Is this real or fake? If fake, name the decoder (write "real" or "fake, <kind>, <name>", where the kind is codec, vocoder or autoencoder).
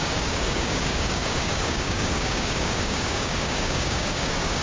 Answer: fake, codec, DAC